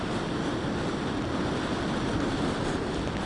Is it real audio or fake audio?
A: real